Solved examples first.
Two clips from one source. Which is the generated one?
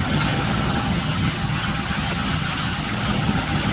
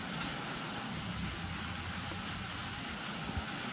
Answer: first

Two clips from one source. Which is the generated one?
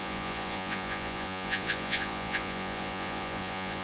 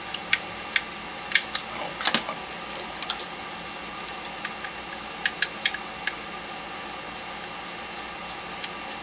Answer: first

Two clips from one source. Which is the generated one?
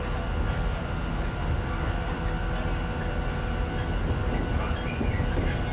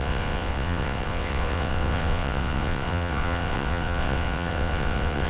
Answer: second